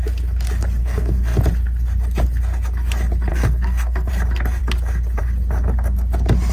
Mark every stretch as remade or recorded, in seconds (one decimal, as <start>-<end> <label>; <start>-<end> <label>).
0.0-0.8 recorded; 0.8-1.4 remade; 1.4-3.3 recorded; 3.3-4.1 remade; 4.1-6.5 recorded